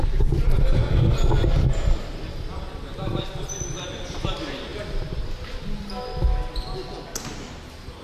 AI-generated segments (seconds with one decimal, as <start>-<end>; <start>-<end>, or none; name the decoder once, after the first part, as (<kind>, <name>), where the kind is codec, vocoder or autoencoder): none